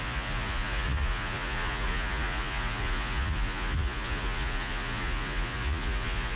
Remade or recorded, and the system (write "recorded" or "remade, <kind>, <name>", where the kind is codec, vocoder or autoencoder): remade, vocoder, Vocos